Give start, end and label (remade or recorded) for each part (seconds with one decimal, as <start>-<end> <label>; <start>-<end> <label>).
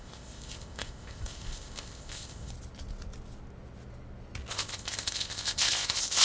0.0-2.5 remade; 2.5-4.5 recorded; 4.5-6.2 remade